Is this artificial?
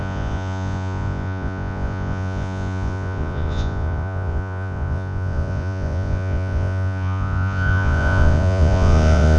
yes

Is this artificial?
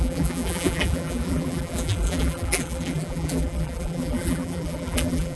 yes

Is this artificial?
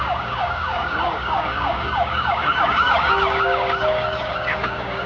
yes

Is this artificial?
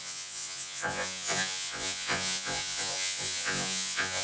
yes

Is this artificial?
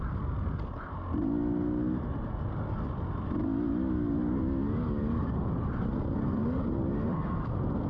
no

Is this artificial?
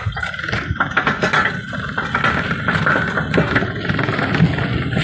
no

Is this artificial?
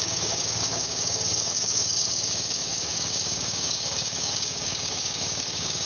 yes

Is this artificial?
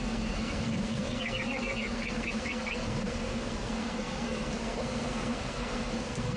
yes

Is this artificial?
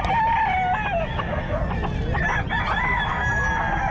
no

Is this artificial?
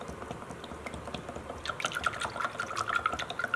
no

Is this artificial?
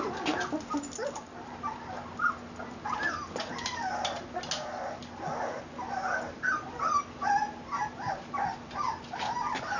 no